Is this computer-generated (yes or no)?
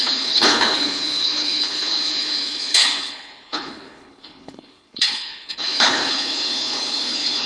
yes